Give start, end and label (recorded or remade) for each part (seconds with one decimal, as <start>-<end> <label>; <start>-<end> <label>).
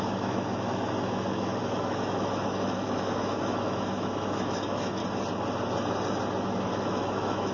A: 0.0-5.0 remade; 5.0-6.7 recorded; 6.7-7.5 remade